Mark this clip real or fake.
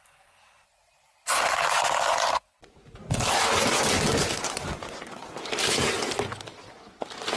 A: real